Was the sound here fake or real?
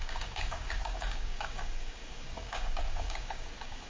fake